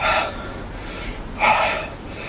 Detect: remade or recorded recorded